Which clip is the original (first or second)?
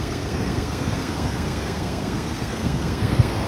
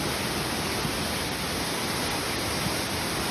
second